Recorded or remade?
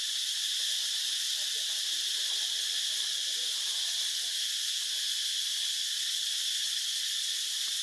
recorded